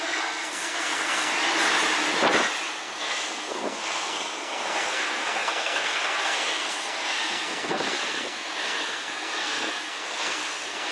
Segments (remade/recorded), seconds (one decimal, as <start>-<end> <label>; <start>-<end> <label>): 0.0-1.3 remade; 1.3-2.8 recorded; 2.8-10.9 remade